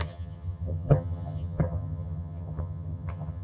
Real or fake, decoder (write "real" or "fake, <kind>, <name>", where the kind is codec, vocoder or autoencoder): fake, vocoder, HiFi-GAN